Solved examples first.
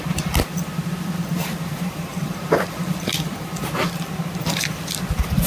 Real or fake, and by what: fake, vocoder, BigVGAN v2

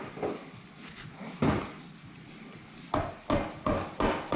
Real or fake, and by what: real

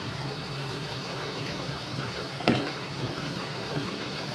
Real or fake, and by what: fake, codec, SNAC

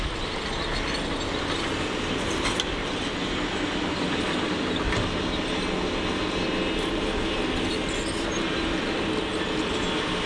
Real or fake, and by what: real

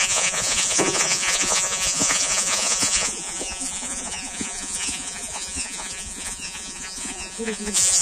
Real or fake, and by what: fake, vocoder, Vocos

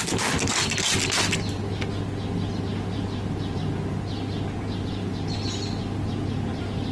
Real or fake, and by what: real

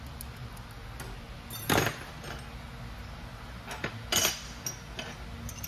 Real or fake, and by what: real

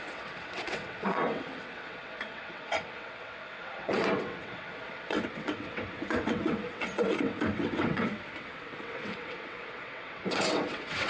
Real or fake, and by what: fake, vocoder, WaveNeXt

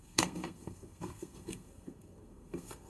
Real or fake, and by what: fake, codec, SNAC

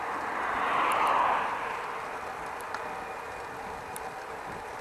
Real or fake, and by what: real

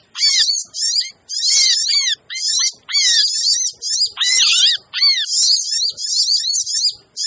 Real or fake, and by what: real